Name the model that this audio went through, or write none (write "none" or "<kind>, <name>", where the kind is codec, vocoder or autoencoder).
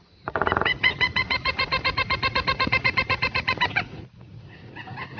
vocoder, Vocos